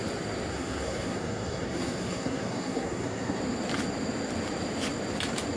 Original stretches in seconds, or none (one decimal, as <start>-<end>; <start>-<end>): 0.0-0.5; 3.4-5.6